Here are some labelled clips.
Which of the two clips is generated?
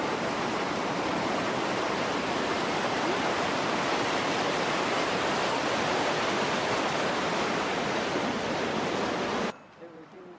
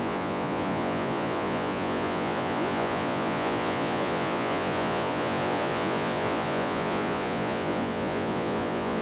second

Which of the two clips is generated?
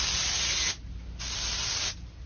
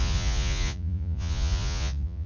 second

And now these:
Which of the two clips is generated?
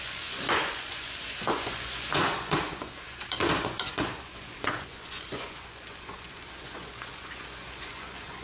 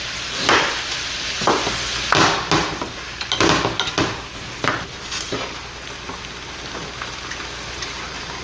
first